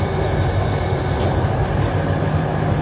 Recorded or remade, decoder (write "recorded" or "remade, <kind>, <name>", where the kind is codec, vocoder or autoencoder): recorded